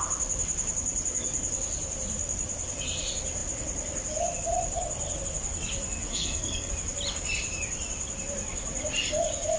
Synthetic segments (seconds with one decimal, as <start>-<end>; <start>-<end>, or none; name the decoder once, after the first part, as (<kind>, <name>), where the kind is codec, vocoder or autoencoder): 6.1-6.7 (codec, SNAC)